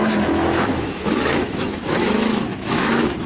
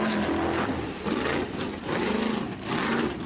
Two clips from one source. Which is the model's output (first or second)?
first